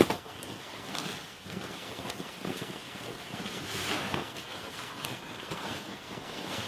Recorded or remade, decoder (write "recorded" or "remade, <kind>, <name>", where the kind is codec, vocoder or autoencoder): remade, codec, SNAC